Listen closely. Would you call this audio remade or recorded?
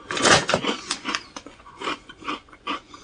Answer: remade